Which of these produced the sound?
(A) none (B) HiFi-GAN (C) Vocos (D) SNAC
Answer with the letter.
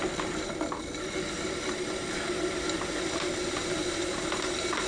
A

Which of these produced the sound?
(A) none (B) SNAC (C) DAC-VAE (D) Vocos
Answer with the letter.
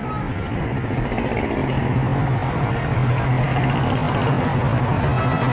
A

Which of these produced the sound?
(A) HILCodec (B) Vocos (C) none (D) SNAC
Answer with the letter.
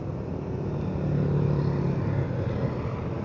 C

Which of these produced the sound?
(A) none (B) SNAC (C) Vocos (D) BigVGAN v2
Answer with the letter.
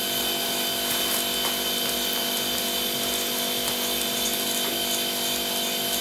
A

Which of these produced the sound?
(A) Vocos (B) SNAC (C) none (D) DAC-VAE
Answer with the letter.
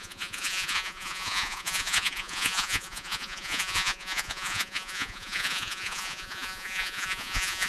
A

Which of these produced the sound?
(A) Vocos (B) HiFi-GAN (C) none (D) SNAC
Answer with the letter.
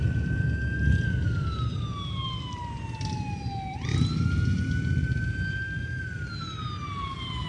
C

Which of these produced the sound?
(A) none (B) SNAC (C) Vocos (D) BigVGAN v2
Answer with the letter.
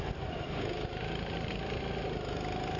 A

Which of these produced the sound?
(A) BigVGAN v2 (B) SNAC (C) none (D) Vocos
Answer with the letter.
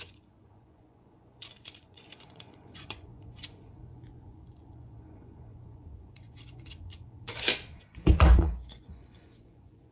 D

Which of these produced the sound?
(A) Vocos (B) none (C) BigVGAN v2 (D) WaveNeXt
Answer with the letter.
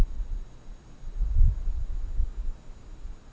B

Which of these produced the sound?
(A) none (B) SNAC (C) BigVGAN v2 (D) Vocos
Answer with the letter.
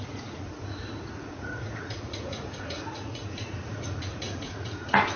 D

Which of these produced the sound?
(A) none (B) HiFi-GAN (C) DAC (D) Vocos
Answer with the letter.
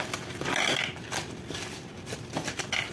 A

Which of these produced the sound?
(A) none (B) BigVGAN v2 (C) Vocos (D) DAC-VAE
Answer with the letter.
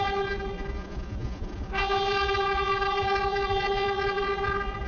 C